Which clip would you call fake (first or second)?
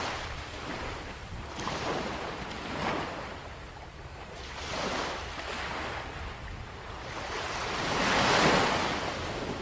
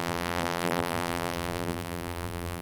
second